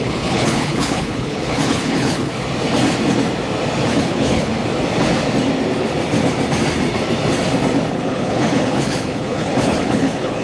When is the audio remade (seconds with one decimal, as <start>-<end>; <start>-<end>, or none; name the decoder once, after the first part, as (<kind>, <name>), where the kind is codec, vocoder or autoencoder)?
0.0-2.3 (codec, HILCodec); 3.9-4.5; 7.9-10.4